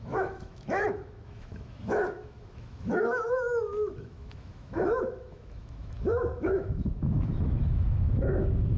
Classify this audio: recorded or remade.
remade